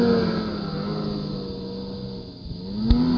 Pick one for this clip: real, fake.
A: real